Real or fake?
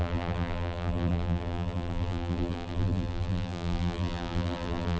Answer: fake